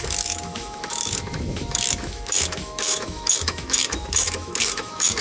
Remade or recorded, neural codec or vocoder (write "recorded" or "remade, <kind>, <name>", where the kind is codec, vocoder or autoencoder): remade, autoencoder, DAC-VAE